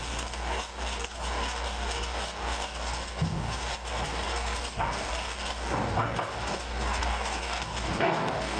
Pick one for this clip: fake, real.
fake